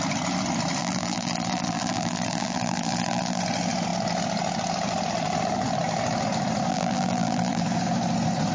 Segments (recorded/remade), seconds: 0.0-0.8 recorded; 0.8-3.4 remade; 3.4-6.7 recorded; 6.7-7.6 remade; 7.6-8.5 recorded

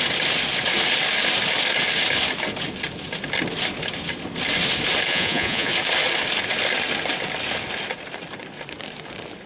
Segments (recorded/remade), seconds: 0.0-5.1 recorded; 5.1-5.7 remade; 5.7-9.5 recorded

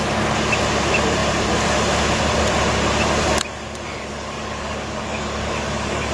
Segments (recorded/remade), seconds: 0.0-3.9 recorded; 3.9-6.1 remade

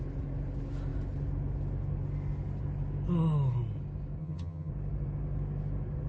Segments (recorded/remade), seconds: 0.0-4.2 recorded; 4.2-4.7 remade; 4.7-6.1 recorded